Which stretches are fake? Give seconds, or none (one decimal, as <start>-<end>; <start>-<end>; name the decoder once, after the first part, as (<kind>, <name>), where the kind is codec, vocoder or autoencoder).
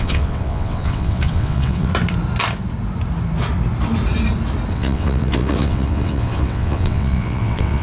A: 0.0-1.9 (vocoder, WaveNeXt); 4.7-7.8